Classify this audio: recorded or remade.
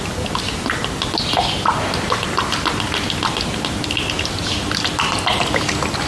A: remade